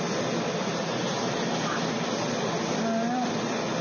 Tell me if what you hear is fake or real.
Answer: real